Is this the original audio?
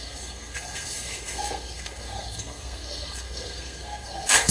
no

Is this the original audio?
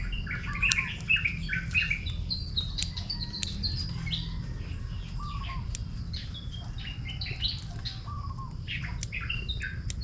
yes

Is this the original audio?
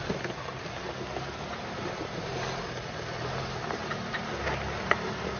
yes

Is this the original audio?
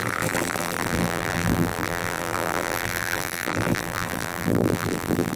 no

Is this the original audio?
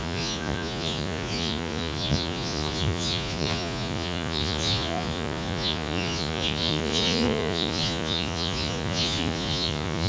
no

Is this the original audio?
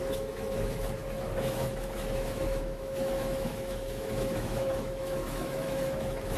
no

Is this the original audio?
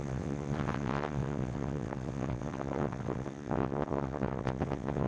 no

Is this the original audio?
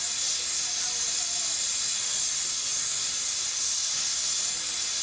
yes